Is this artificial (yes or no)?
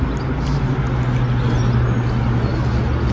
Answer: no